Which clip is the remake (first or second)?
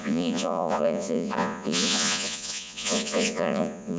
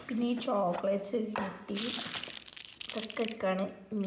first